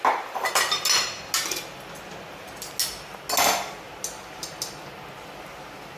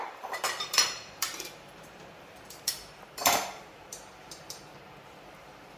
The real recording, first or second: first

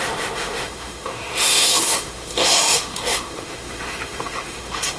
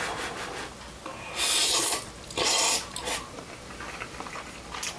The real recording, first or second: second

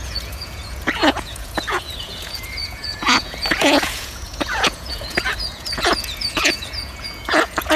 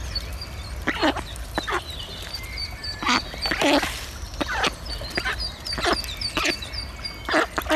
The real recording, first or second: second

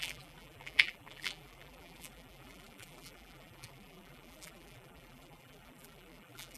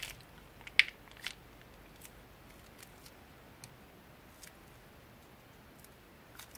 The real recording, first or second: second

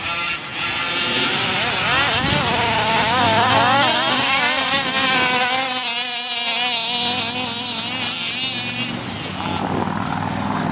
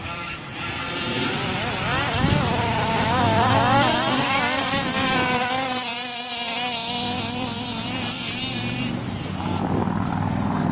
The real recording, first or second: first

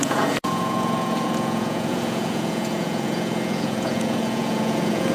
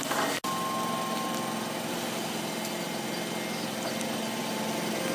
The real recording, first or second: second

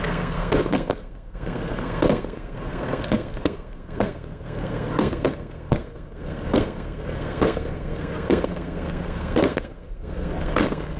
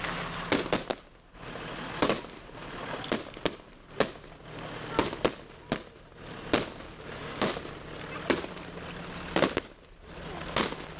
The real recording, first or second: second